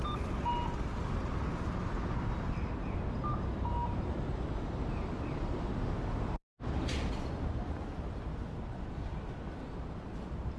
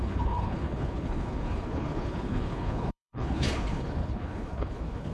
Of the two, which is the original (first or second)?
first